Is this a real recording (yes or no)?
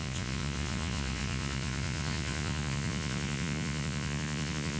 no